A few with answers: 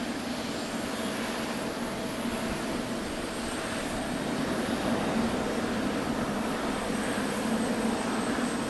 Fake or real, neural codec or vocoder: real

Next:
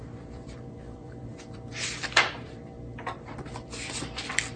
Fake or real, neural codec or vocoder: fake, vocoder, BigVGAN v2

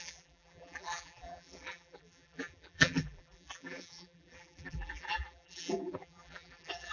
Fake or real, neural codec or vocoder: fake, vocoder, BigVGAN v2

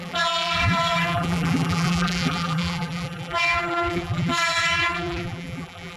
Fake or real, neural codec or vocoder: fake, vocoder, BigVGAN v2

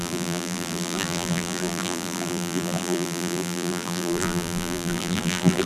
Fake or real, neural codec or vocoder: fake, vocoder, BigVGAN v2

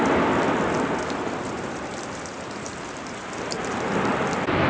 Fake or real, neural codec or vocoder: real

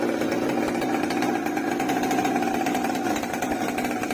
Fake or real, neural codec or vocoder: real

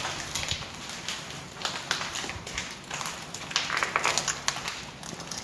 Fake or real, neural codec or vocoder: real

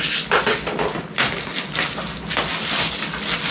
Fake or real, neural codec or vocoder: real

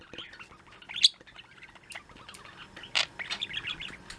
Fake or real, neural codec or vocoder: real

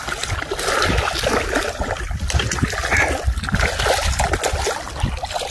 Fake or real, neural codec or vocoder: real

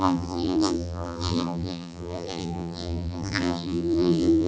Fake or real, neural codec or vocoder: fake, vocoder, BigVGAN v2